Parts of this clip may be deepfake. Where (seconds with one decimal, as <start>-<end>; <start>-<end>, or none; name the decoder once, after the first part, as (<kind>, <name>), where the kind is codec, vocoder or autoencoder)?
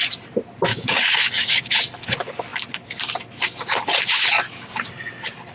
0.7-1.7 (codec, DAC)